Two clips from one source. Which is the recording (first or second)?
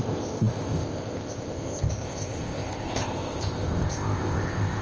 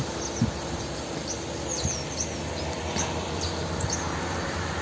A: second